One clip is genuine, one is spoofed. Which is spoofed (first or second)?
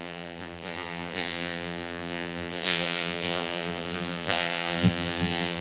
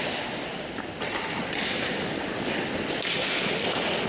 first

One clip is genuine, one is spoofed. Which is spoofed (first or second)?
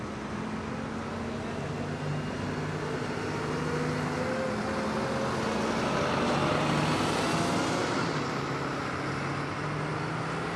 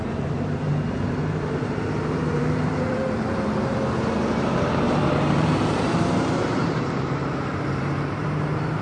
second